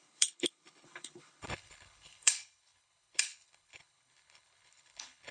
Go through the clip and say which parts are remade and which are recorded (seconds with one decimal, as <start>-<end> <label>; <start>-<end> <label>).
0.0-5.3 remade